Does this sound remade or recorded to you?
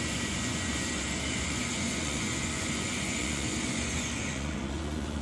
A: remade